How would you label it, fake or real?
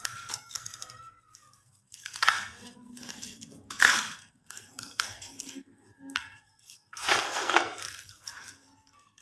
fake